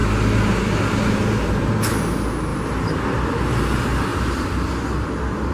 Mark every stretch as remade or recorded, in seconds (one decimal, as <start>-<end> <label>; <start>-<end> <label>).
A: 0.0-5.5 recorded